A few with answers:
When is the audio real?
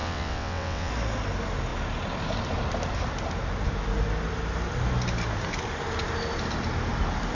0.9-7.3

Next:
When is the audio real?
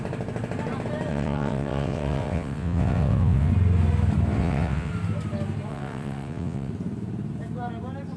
0.0-1.1; 3.5-4.4; 4.9-5.7; 6.7-8.2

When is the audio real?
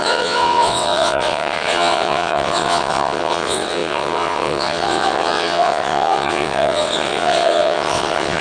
none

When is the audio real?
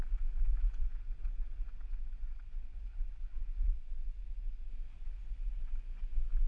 0.0-0.8; 4.7-6.5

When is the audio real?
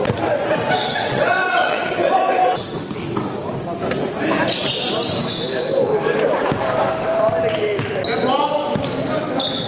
0.0-0.8; 2.2-9.7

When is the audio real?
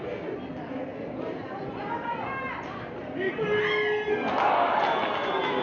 0.0-5.6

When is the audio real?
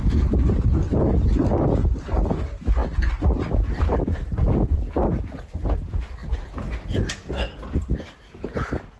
0.0-9.0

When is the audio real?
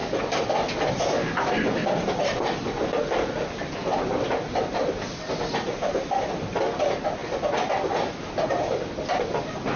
0.0-9.8